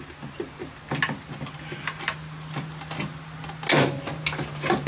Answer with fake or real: real